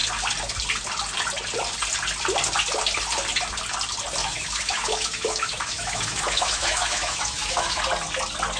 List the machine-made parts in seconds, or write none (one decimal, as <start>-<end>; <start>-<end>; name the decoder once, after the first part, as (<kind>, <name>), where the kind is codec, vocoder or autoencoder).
4.2-7.8 (autoencoder, DAC-VAE)